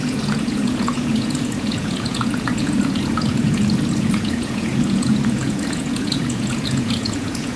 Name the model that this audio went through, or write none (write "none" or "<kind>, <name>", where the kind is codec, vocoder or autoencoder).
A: vocoder, Vocos